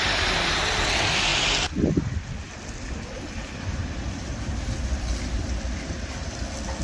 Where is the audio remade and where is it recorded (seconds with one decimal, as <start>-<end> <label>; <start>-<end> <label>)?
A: 0.0-6.8 recorded